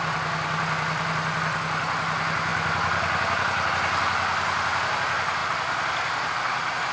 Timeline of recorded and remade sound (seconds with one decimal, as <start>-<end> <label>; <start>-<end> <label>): 0.0-6.9 recorded